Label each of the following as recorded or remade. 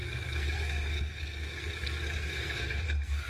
remade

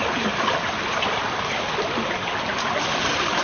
recorded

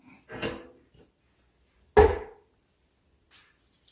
recorded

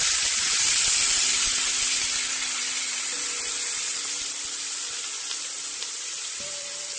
remade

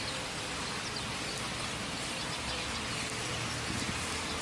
recorded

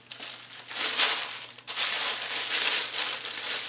recorded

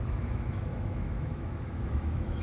remade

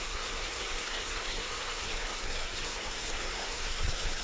remade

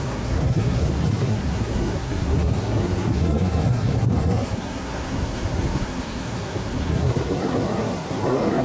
remade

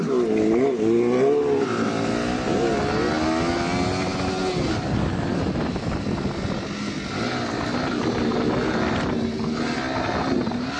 recorded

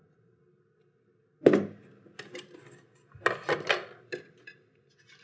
recorded